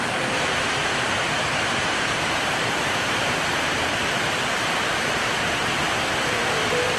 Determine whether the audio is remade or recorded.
remade